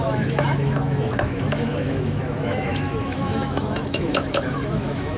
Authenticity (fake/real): fake